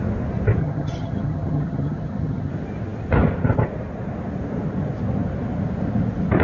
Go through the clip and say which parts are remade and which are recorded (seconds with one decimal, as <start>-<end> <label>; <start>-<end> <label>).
0.0-0.6 recorded; 0.6-2.5 remade; 2.5-6.4 recorded